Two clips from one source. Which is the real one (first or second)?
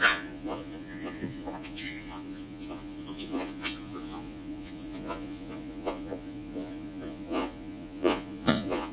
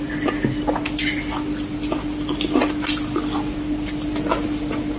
second